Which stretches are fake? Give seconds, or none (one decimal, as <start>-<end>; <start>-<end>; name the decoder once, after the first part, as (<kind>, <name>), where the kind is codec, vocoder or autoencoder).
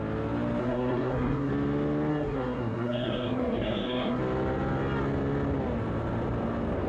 0.6-1.5 (codec, SNAC); 2.1-4.2